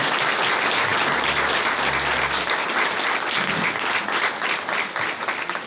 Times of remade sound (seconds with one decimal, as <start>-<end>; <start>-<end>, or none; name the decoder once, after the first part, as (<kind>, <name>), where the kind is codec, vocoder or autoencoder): none